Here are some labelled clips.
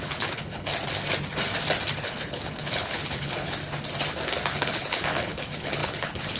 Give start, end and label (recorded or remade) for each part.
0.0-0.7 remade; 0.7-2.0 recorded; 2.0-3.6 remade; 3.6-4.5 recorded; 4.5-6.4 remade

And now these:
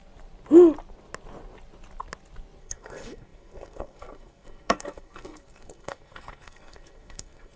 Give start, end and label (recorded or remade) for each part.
0.0-2.6 recorded; 2.6-7.6 remade

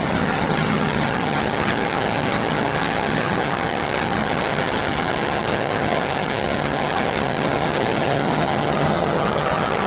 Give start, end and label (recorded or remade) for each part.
0.0-9.9 remade